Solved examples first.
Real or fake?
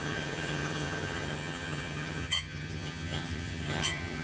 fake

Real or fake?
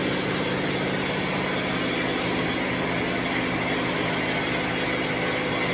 real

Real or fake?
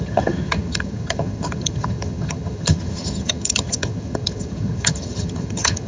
fake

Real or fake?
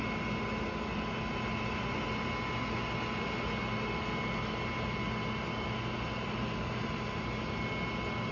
real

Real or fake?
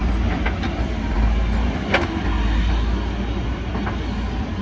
real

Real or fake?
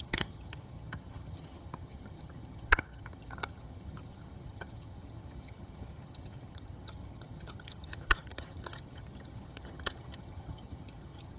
fake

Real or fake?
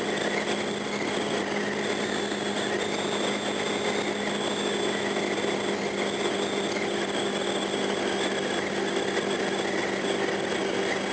real